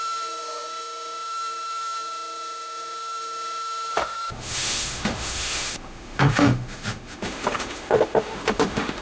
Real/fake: fake